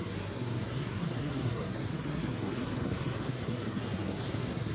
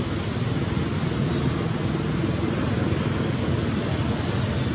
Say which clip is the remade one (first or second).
first